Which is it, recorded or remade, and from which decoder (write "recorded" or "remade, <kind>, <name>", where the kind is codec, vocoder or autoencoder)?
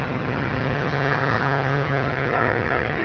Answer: remade, vocoder, HiFi-GAN